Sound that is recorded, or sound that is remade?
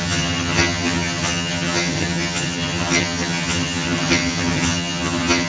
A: remade